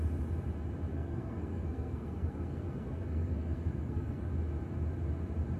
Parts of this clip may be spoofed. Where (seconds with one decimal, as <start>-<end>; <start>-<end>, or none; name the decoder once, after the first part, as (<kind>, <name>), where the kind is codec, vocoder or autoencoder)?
0.9-4.3 (codec, SNAC)